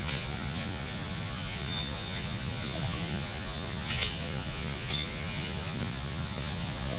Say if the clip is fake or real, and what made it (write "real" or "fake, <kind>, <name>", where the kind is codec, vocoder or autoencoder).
fake, vocoder, Vocos